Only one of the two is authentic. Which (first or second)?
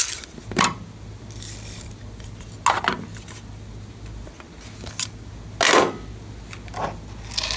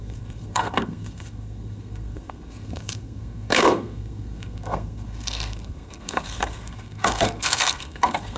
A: first